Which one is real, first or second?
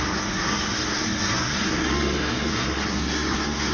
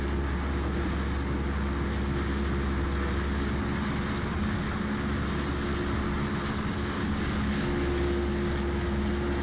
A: second